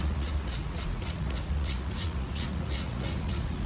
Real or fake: fake